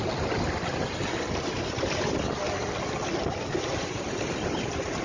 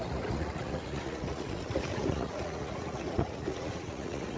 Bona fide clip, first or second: first